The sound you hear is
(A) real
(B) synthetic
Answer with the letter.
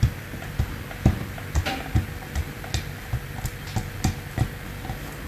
A